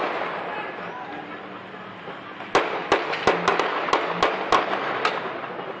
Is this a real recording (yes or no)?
yes